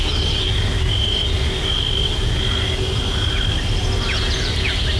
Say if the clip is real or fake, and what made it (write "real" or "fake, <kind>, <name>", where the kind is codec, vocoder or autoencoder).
real